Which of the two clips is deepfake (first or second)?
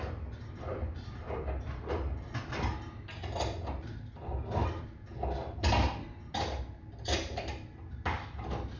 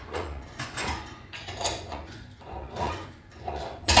second